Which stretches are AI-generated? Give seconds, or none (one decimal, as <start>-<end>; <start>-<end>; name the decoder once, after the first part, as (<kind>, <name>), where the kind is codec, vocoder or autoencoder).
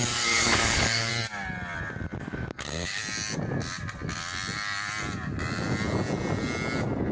0.0-1.1 (codec, DAC); 2.2-3.0